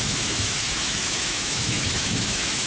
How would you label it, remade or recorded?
remade